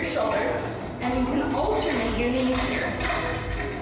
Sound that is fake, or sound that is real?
real